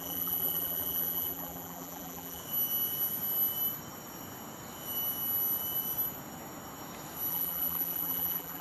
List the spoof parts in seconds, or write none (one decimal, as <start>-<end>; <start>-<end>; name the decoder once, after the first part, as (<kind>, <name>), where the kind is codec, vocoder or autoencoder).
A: 0.0-2.4 (vocoder, BigVGAN v2); 7.3-8.6